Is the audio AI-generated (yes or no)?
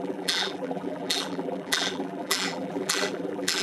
yes